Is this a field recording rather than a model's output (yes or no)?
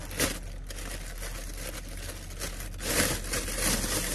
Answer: yes